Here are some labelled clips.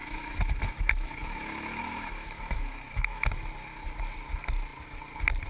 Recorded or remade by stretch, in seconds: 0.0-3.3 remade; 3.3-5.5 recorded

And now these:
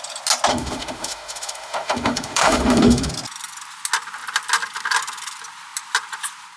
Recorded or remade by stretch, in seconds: 0.0-0.5 recorded; 0.5-3.1 remade; 3.1-6.6 recorded

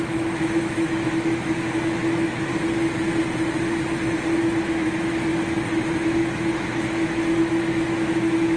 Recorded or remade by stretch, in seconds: 0.0-2.5 remade; 2.5-4.1 recorded; 4.1-8.6 remade

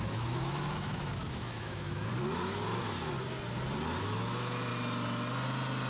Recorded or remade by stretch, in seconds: 0.0-2.1 remade; 2.1-4.0 recorded; 4.0-4.7 remade; 4.7-5.9 recorded

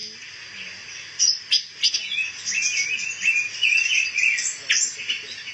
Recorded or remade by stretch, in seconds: 0.0-5.5 recorded